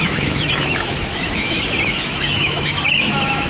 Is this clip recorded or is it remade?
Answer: remade